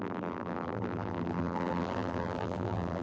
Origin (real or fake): fake